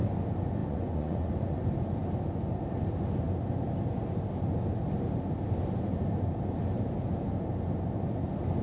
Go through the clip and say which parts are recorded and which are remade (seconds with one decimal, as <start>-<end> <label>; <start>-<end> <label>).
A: 0.0-0.6 recorded; 0.6-1.6 remade; 1.6-8.6 recorded